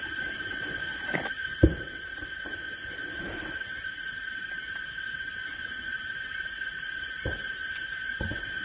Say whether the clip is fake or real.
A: real